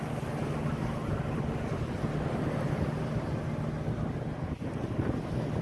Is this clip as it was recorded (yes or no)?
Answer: yes